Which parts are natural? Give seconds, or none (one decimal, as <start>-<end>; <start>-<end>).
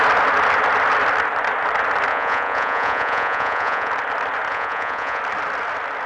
0.0-2.1; 3.9-4.5; 5.2-6.1